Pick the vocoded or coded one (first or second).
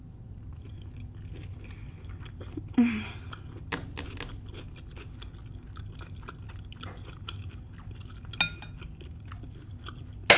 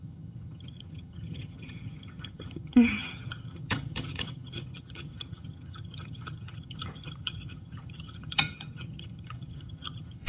second